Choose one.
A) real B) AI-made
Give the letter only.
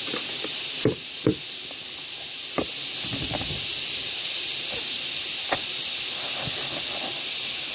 A